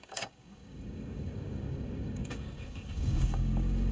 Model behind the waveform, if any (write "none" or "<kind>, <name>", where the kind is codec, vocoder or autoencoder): codec, DAC